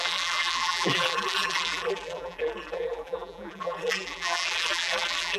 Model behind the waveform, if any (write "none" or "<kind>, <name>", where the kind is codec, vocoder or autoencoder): vocoder, BigVGAN v2